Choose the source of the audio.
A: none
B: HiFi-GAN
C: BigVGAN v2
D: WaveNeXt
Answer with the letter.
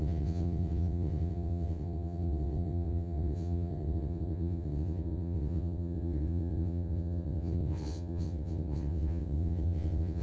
D